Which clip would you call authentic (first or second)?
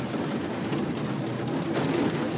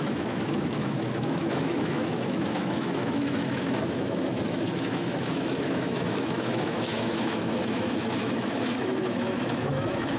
first